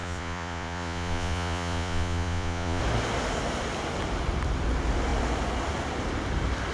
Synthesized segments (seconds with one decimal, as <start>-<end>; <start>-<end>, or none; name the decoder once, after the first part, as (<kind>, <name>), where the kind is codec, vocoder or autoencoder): 0.0-2.8 (vocoder, Vocos)